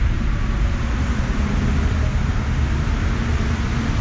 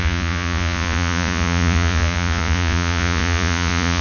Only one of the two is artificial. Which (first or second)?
second